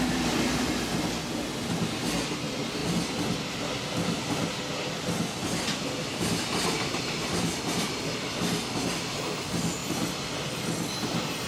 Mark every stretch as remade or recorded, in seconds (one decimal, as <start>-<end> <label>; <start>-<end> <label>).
0.0-11.5 recorded